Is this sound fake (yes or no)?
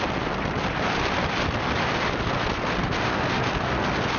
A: no